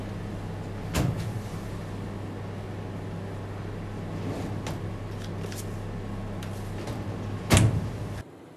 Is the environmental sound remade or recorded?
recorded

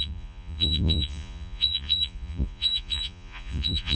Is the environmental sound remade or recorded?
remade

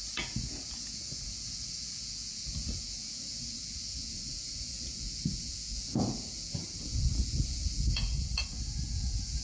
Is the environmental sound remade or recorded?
remade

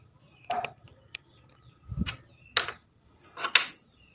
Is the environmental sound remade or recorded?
recorded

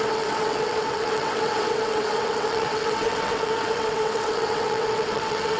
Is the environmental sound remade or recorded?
remade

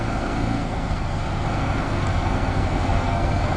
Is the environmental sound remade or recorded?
remade